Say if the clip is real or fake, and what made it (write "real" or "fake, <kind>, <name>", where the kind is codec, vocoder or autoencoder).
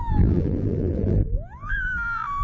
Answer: fake, vocoder, BigVGAN v2